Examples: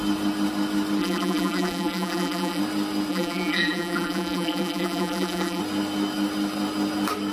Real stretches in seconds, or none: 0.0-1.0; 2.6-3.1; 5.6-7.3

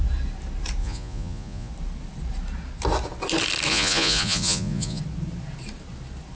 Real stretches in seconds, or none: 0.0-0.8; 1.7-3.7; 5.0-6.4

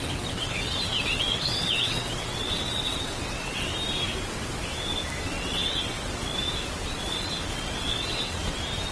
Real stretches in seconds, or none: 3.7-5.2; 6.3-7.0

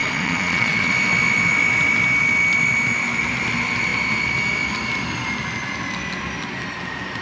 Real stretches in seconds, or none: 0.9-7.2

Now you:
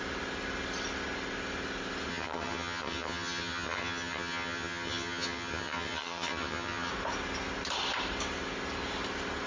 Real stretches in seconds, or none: 0.0-2.1; 6.9-9.5

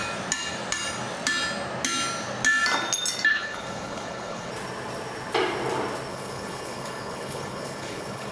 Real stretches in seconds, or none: 0.0-3.3; 4.5-6.1

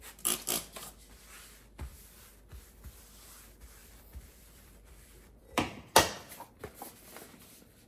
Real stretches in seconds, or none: 0.0-1.9; 3.0-3.8; 6.3-7.9

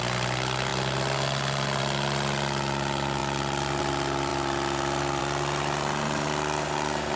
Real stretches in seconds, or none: 0.0-7.2